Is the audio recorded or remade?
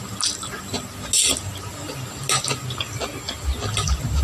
recorded